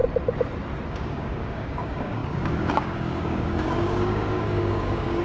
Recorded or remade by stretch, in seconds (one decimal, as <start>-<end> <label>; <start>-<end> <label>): 0.0-0.9 recorded; 0.9-5.2 remade